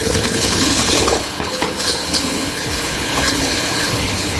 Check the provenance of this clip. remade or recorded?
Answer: remade